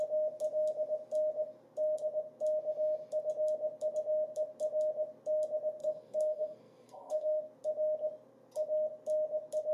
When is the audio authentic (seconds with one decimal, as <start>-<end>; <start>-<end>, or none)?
0.0-5.8; 7.4-9.7